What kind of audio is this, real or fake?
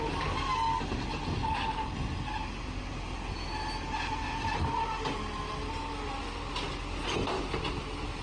real